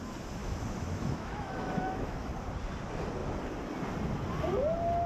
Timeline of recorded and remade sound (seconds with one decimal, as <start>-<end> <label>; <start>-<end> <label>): 0.0-0.4 recorded; 0.4-2.3 remade; 2.3-5.1 recorded